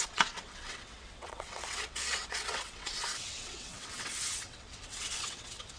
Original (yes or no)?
no